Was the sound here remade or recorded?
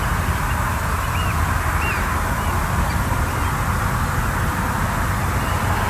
recorded